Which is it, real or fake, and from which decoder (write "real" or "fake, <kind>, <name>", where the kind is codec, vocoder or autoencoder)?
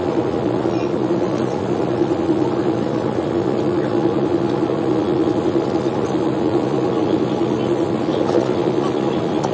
fake, vocoder, Vocos